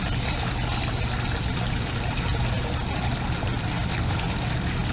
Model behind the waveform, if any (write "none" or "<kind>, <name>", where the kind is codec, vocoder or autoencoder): none